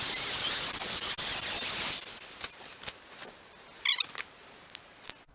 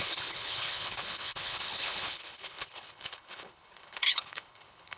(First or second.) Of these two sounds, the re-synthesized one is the second